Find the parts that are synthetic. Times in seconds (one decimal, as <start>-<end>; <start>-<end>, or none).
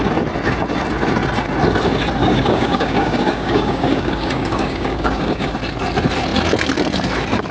2.2-5.5